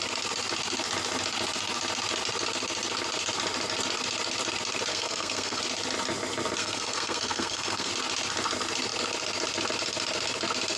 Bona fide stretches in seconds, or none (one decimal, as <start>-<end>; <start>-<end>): 0.0-4.9; 5.6-6.6; 7.9-10.8